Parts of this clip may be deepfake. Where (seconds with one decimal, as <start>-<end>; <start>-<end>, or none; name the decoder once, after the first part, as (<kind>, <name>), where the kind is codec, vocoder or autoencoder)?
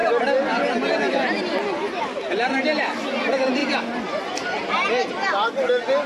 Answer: none